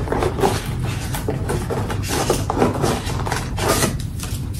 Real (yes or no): yes